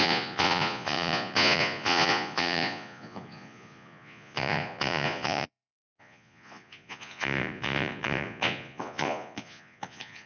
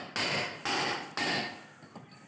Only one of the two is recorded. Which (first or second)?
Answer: second